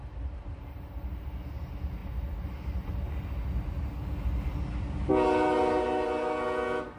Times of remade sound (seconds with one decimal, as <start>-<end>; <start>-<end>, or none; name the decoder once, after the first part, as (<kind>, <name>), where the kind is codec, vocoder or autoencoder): none